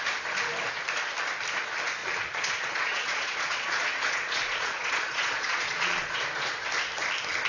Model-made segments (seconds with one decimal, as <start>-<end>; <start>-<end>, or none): 2.0-6.2